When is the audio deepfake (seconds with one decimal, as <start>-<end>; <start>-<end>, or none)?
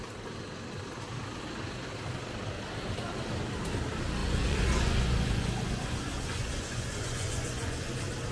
4.2-7.9